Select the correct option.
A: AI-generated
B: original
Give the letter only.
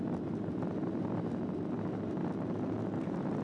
B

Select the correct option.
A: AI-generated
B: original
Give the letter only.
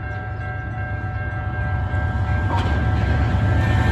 B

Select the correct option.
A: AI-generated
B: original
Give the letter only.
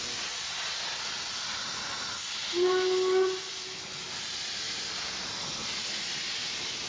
B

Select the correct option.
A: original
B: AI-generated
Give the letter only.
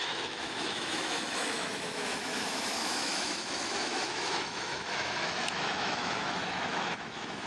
B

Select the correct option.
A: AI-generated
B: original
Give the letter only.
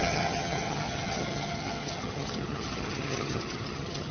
A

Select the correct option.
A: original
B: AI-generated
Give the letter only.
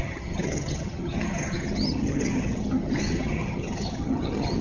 B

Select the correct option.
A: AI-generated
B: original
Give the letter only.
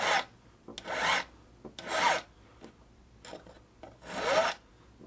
B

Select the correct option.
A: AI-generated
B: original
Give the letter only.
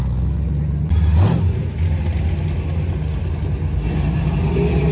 B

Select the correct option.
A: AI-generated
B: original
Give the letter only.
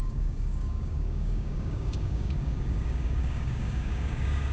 A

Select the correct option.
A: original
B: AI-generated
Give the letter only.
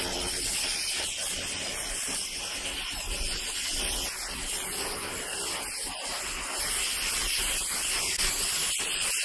A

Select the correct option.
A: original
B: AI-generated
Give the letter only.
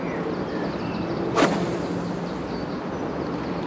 A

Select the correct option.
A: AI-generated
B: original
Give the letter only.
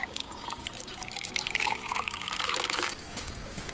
A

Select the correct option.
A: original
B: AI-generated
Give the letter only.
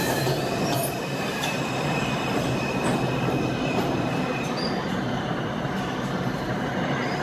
B